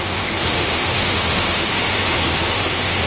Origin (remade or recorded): remade